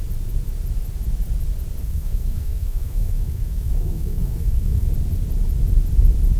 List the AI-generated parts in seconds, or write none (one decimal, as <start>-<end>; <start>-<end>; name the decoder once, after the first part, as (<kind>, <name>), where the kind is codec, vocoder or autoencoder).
1.8-4.9 (codec, SNAC)

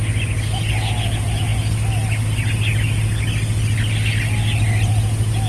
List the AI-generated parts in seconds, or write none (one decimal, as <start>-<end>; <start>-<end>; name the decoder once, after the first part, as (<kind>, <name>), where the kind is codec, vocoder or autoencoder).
none

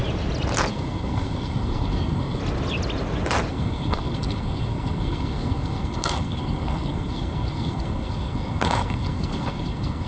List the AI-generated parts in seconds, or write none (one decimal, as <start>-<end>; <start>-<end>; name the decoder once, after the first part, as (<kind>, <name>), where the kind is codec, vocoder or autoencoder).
0.7-2.4 (codec, SNAC); 3.5-10.1

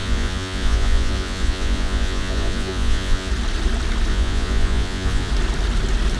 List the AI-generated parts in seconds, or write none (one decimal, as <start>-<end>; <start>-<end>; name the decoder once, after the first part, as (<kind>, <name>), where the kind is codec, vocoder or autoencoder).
0.0-3.3 (vocoder, Vocos); 4.1-5.3